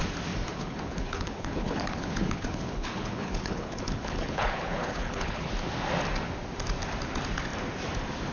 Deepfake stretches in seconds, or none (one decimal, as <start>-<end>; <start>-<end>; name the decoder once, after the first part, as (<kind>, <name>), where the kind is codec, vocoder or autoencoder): 0.5-5.5 (codec, HILCodec)